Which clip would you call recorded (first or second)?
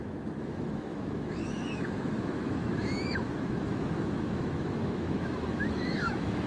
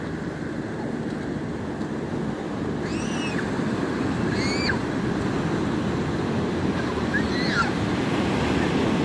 second